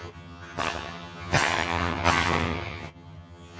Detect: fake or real fake